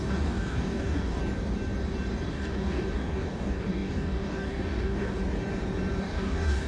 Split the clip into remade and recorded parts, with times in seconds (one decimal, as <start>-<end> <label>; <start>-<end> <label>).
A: 0.0-1.2 remade; 1.2-2.3 recorded; 2.3-5.2 remade; 5.2-6.0 recorded; 6.0-6.7 remade